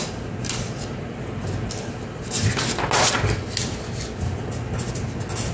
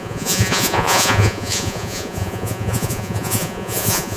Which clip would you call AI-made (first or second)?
second